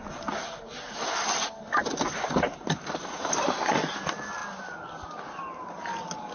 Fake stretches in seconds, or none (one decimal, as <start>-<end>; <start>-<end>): 1.8-3.9